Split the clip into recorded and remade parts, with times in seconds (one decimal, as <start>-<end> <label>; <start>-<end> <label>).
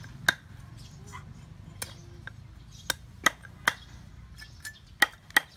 0.0-5.6 recorded